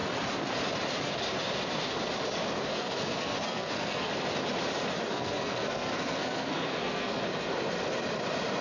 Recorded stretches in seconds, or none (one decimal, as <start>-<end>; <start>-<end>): 0.0-2.7; 4.1-5.1; 7.2-8.6